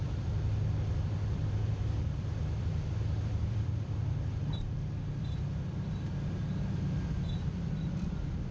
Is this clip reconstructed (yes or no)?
yes